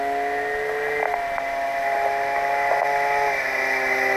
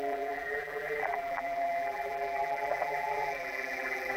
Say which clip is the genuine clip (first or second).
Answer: first